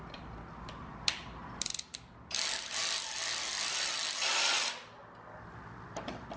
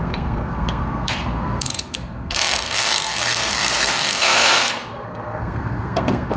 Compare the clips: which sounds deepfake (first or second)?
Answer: second